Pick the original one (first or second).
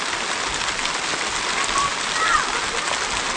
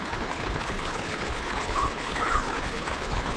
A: first